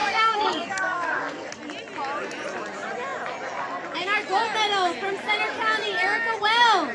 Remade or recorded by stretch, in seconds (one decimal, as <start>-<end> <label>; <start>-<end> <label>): 0.0-1.5 remade; 1.5-6.9 recorded